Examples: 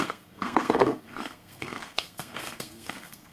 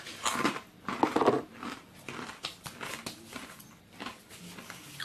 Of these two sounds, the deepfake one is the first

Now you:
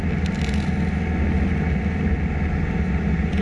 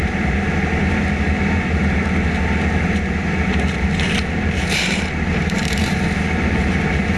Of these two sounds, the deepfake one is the second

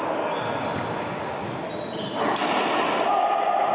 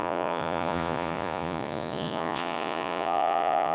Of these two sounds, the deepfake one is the second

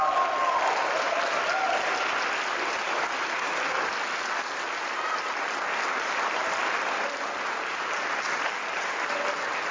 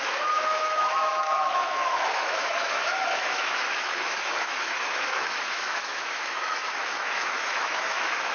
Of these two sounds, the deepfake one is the second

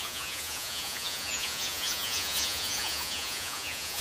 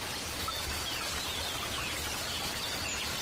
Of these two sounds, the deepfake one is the first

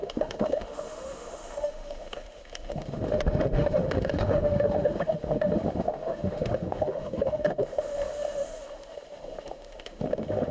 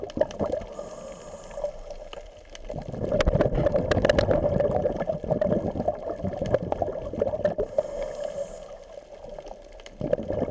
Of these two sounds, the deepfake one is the first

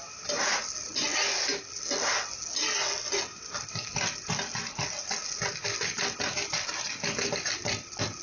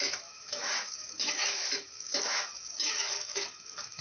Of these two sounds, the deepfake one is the second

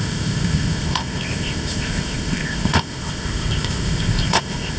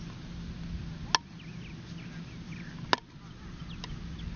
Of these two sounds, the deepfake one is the first